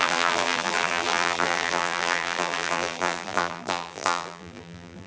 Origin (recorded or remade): remade